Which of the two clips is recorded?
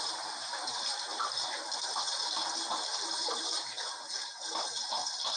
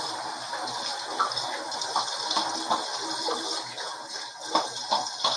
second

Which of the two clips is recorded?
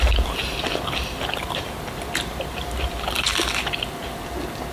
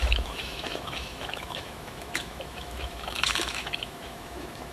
first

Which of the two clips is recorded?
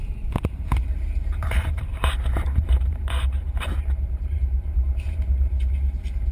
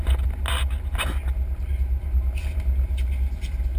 second